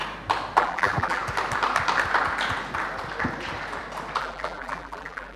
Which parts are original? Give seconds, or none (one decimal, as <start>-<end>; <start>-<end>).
0.0-0.6; 1.2-4.2